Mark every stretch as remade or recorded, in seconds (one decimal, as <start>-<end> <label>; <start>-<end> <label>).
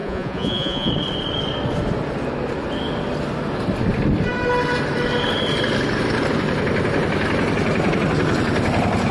0.0-0.9 remade; 0.9-9.1 recorded